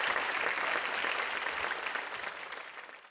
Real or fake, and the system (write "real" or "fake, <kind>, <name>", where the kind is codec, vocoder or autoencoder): real